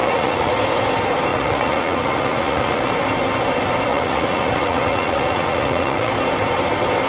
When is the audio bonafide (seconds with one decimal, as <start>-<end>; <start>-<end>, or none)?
0.5-1.3; 2.9-3.9; 6.1-7.1